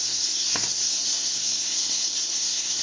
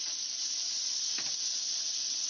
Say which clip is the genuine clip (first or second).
second